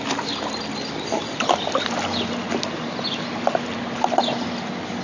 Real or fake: real